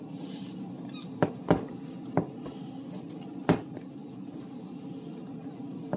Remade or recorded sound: recorded